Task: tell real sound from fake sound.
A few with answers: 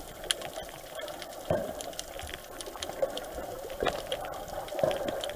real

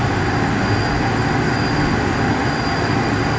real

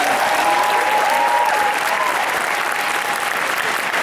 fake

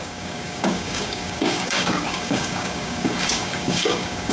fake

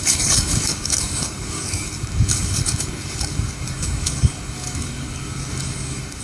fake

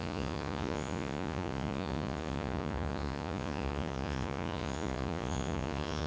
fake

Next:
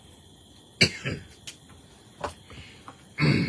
real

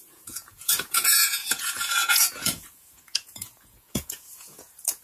fake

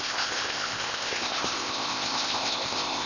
fake